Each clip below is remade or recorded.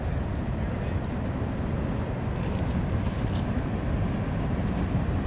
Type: recorded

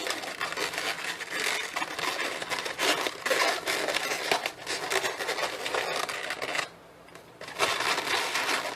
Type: recorded